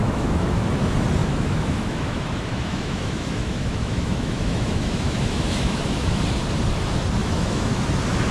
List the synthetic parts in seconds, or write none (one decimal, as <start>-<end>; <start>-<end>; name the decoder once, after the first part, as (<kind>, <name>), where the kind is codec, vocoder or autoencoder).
0.0-0.6 (autoencoder, DAC-VAE); 1.2-6.2; 7.2-7.8